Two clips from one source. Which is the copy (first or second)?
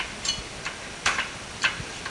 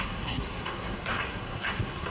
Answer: second